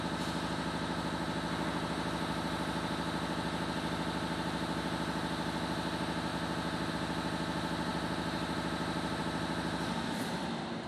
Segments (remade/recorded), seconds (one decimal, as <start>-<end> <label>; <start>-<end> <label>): 0.0-10.9 recorded